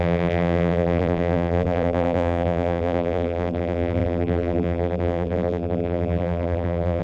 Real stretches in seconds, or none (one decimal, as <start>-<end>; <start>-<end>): none